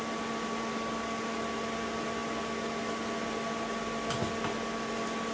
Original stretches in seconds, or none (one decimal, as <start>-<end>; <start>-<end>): 0.0-5.3